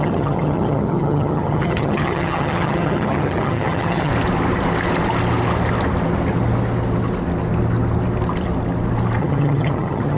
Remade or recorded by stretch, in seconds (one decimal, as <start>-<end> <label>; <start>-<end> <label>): 0.0-4.1 remade; 4.1-9.2 recorded; 9.2-10.2 remade